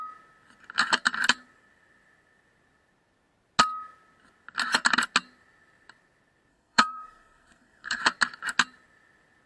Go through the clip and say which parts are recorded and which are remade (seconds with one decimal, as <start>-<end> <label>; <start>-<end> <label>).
0.0-6.5 recorded; 6.5-8.0 remade; 8.0-9.5 recorded